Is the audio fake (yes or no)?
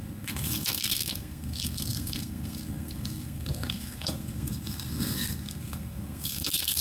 yes